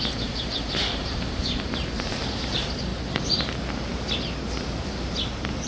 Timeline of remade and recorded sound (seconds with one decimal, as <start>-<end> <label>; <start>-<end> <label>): 0.0-2.9 remade; 2.9-5.7 recorded